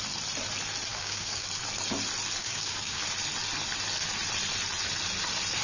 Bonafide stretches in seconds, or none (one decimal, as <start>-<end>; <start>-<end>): 0.0-0.9; 1.5-2.4; 3.0-5.6

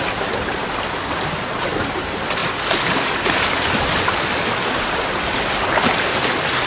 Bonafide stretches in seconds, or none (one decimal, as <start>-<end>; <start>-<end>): 0.0-6.7

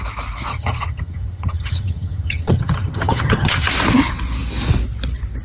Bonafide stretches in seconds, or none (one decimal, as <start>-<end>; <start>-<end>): 0.0-0.5; 3.7-5.4

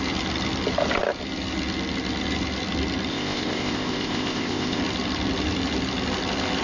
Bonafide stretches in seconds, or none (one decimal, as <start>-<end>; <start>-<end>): 0.0-3.1; 4.8-6.6

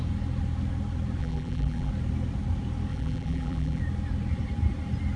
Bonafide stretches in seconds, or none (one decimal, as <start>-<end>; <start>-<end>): 0.0-1.2; 1.9-2.9; 3.8-5.2

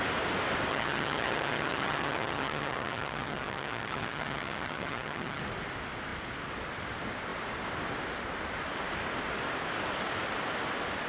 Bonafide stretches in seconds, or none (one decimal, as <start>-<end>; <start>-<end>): 0.0-0.7; 5.4-11.1

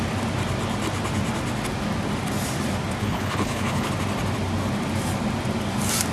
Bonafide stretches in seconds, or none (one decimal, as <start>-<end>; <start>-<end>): 0.0-3.0; 3.9-6.1